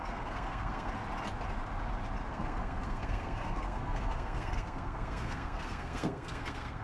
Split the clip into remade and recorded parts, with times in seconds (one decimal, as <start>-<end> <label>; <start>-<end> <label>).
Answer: 0.0-0.9 remade; 0.9-2.3 recorded; 2.3-6.8 remade